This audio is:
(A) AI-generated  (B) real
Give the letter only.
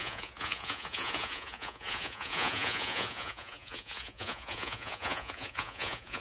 A